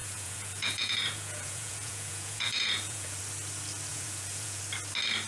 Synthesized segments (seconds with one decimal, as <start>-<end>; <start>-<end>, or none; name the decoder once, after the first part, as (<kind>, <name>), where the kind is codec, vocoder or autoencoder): 0.0-3.2 (vocoder, Vocos); 3.9-4.6